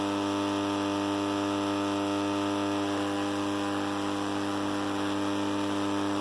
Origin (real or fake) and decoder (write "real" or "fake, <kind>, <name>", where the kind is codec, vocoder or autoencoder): real